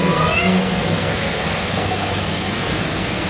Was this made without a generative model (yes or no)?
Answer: no